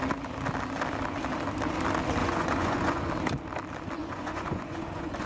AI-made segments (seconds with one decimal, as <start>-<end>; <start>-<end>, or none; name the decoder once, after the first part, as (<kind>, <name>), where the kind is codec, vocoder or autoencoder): 2.2-3.1 (vocoder, Vocos); 4.0-5.3